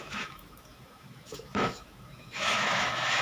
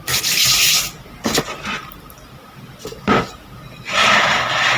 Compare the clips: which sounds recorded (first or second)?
second